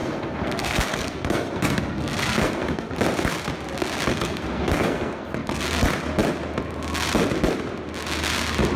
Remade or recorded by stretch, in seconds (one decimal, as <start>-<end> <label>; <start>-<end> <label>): 0.0-3.0 remade; 3.0-4.1 recorded; 4.1-5.6 remade; 5.6-8.8 recorded